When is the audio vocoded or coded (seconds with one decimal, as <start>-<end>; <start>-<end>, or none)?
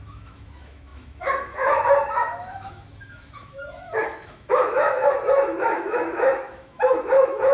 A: 0.0-7.5